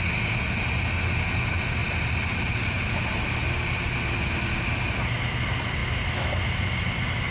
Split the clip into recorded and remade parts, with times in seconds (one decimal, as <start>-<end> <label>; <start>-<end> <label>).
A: 0.0-7.3 recorded